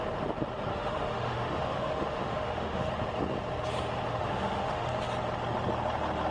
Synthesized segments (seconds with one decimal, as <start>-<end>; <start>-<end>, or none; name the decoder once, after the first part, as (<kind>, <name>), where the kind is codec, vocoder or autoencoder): 0.7-2.9 (autoencoder, DAC-VAE); 4.1-4.9